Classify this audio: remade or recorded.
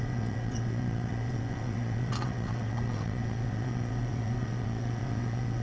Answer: remade